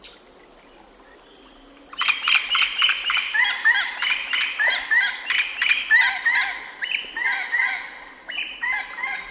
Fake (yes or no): no